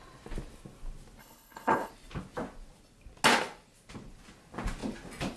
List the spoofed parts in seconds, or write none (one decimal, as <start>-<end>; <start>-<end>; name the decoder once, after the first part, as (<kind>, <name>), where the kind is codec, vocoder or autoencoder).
1.2-1.9 (codec, HILCodec)